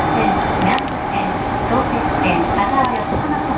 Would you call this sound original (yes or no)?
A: yes